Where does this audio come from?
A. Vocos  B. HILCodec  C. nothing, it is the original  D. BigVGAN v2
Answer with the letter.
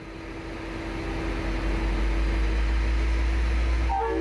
C